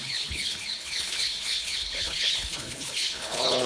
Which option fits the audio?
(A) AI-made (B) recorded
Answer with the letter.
A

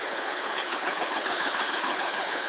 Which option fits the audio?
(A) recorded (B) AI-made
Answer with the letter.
B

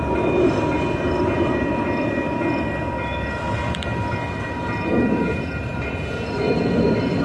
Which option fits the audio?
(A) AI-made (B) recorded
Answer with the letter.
B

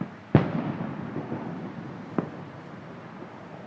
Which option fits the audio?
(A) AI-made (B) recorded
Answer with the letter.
B